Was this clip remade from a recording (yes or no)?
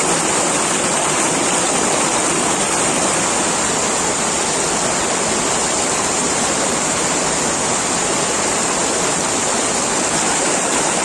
no